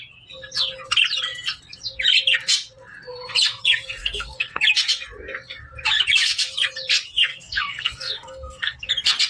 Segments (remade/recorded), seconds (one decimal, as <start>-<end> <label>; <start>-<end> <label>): 0.0-4.0 recorded; 4.0-4.6 remade; 4.6-7.3 recorded; 7.3-8.9 remade; 8.9-9.3 recorded